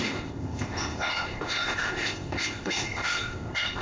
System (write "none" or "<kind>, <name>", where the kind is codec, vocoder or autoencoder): codec, ZipCodec